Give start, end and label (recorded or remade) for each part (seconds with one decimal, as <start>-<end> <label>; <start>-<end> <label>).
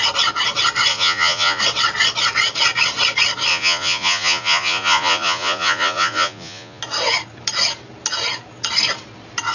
0.0-0.9 recorded; 0.9-1.6 remade; 1.6-3.5 recorded; 3.5-6.8 remade; 6.8-9.5 recorded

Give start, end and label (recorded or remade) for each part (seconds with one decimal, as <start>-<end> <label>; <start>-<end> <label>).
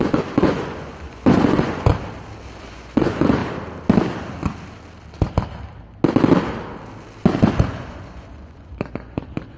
0.0-1.9 remade; 1.9-2.6 recorded; 2.6-3.4 remade; 3.4-7.5 recorded; 7.5-9.6 remade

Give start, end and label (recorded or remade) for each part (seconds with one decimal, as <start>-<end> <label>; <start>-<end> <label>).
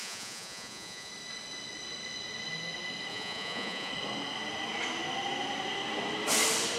0.0-1.1 remade; 1.1-3.1 recorded; 3.1-3.9 remade; 3.9-6.8 recorded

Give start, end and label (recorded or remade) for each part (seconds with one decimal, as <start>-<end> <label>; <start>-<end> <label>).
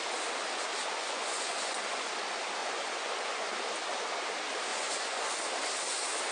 0.0-0.9 recorded; 0.9-2.1 remade; 2.1-2.6 recorded; 2.6-3.5 remade; 3.5-4.7 recorded; 4.7-5.4 remade; 5.4-6.3 recorded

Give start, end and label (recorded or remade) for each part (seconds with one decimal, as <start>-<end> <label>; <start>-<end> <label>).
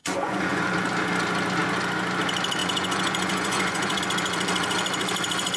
0.0-0.6 remade; 0.6-2.6 recorded; 2.6-4.0 remade; 4.0-5.6 recorded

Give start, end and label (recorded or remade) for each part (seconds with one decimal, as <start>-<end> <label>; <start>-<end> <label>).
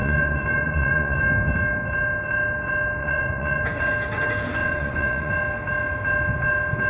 0.0-1.2 remade; 1.2-3.0 recorded; 3.0-3.6 remade; 3.6-4.6 recorded; 4.6-5.3 remade; 5.3-6.9 recorded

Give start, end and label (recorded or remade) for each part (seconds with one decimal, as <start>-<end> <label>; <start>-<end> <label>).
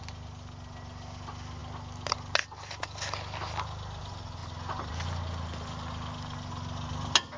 0.0-7.4 recorded